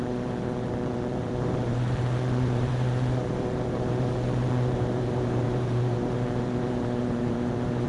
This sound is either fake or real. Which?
fake